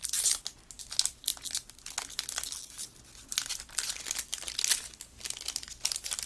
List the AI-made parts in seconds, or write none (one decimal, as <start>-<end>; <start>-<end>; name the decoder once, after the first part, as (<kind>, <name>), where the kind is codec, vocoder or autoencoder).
none